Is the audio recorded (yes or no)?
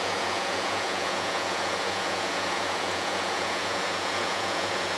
no